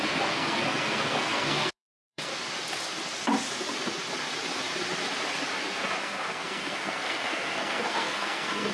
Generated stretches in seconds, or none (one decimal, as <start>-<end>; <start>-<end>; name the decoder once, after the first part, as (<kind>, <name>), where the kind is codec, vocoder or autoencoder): 0.0-2.3 (codec, SNAC); 6.0-8.7